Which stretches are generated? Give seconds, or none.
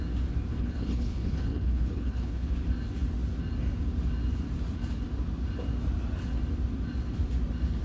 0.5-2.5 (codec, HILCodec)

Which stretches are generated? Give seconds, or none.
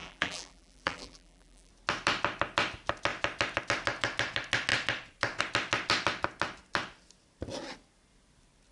0.0-1.7 (vocoder, BigVGAN v2)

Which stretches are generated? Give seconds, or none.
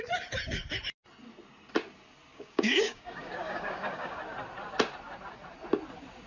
2.3-4.2 (codec, DAC)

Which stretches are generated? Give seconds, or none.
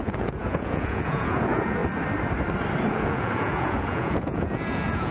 0.0-1.8 (vocoder, Vocos); 2.9-5.1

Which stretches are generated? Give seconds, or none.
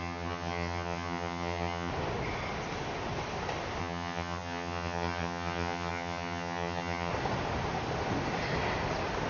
0.0-1.9 (vocoder, HiFi-GAN); 3.8-7.1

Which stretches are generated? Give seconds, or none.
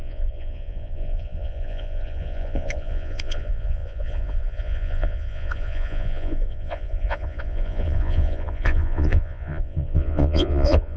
0.0-11.0 (vocoder, Vocos)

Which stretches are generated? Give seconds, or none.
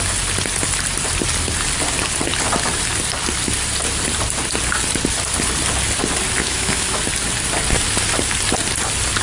6.4-7.0 (autoencoder, DAC-VAE)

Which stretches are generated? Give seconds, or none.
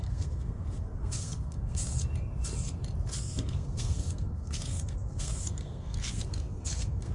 0.0-2.0 (codec, SNAC); 3.2-7.1